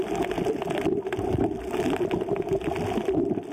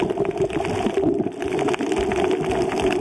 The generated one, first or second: second